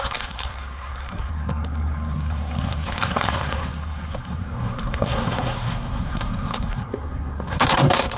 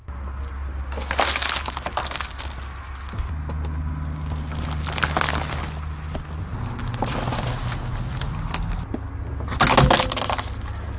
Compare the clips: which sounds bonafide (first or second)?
second